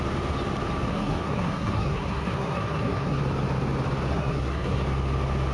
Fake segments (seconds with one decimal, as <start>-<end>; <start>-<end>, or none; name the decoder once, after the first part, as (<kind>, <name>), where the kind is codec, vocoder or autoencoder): 0.9-3.2 (codec, SNAC); 4.1-4.8